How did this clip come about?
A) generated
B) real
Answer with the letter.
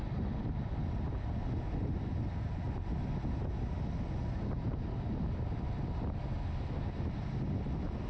B